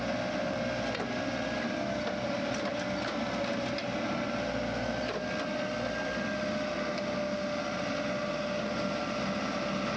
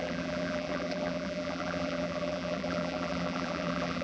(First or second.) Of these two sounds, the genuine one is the first